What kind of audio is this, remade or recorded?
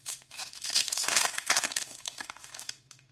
remade